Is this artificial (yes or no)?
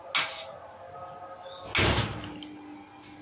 no